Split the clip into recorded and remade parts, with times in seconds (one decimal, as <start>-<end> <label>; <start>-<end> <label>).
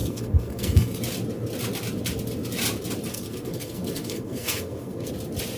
0.0-1.0 remade; 1.0-3.1 recorded; 3.1-5.1 remade; 5.1-5.6 recorded